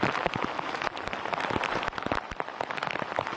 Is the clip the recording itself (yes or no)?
yes